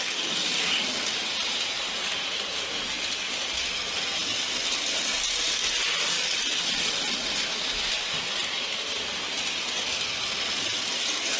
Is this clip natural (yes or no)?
yes